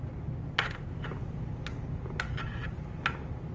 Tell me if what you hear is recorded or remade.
recorded